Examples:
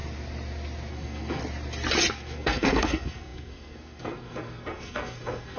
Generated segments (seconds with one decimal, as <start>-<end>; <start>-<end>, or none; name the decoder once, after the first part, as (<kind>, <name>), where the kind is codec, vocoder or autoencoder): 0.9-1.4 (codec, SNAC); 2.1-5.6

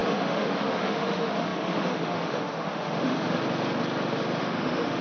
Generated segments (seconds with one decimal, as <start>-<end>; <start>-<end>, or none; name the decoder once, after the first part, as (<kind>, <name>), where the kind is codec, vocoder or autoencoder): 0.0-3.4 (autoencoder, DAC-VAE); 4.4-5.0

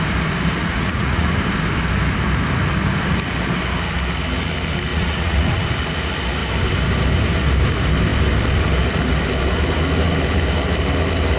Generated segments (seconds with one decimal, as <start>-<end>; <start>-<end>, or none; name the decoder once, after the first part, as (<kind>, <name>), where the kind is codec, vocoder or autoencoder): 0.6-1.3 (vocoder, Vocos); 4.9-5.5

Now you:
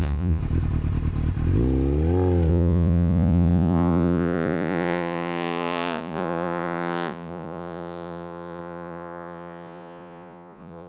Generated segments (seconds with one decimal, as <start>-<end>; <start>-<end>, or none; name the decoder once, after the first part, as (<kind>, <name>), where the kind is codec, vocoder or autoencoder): 0.0-0.4 (vocoder, Vocos); 2.5-10.9

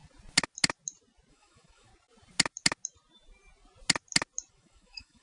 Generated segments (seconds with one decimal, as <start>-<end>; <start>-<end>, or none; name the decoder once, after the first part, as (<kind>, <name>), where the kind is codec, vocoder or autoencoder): 1.3-1.9 (autoencoder, DAC-VAE); 4.5-5.2